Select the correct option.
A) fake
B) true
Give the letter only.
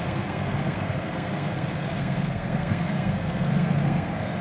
A